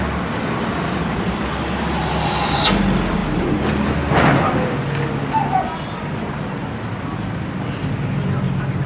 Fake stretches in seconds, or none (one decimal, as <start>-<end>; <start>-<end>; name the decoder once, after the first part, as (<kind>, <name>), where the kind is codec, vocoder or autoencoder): none